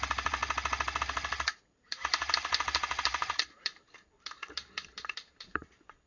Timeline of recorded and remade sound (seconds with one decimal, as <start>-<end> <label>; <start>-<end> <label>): 0.0-0.4 remade; 0.4-1.0 recorded; 1.0-6.1 remade